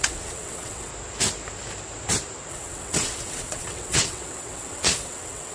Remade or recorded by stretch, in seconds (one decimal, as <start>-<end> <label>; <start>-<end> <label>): 0.0-0.9 remade; 0.9-2.5 recorded; 2.5-5.5 remade